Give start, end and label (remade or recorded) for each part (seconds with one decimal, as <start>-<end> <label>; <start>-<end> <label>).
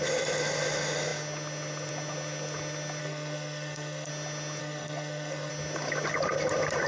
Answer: 0.0-3.0 recorded; 3.0-4.1 remade; 4.1-4.6 recorded; 4.6-5.5 remade; 5.5-6.9 recorded